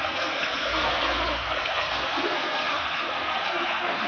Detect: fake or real fake